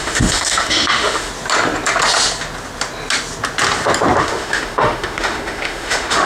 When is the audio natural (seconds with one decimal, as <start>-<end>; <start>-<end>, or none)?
1.3-4.2